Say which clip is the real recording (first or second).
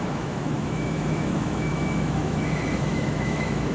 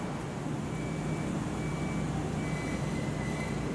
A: second